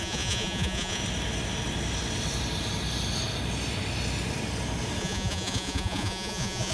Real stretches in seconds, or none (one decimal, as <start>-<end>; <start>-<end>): 1.0-5.0